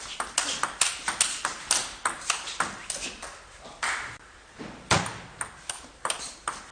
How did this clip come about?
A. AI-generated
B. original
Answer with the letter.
B